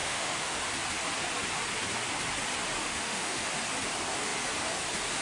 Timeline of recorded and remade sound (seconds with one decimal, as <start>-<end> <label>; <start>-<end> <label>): 0.0-0.6 remade; 0.6-2.8 recorded; 2.8-3.5 remade; 3.5-5.2 recorded